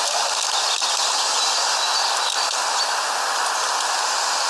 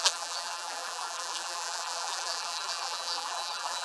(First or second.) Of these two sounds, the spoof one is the second